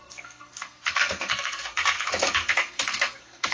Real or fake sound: fake